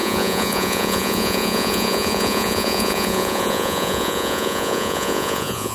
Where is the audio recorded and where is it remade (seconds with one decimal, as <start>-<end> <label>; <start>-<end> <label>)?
0.0-5.7 remade